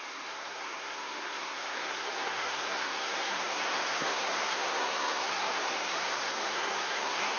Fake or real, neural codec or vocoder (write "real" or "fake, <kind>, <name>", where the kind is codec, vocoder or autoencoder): fake, codec, SNAC